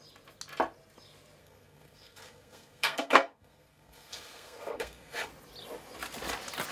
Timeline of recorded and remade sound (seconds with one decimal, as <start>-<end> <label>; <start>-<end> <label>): 0.0-1.4 recorded; 1.4-5.3 remade; 5.3-6.7 recorded